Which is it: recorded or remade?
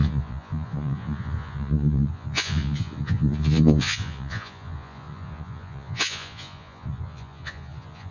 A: remade